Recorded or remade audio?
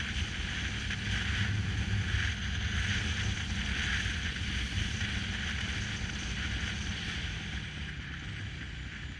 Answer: recorded